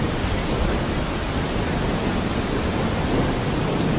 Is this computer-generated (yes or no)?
no